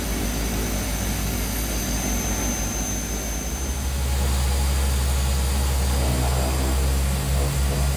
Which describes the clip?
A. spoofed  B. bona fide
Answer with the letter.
B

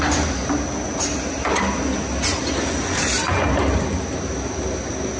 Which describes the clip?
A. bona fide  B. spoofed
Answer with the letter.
A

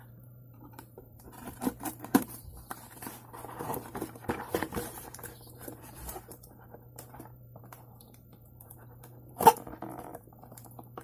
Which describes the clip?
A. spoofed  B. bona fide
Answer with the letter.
A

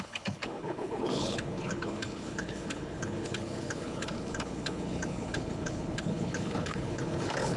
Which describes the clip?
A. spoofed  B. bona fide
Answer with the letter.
A